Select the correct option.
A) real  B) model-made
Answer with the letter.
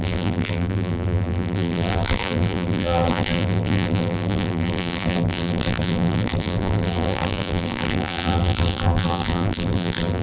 B